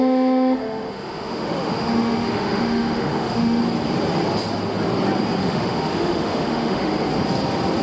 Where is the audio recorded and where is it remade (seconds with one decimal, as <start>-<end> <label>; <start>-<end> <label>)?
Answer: 0.0-3.6 remade; 3.6-5.4 recorded; 5.4-6.9 remade; 6.9-7.8 recorded